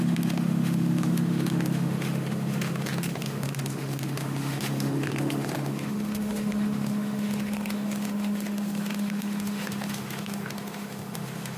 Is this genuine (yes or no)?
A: no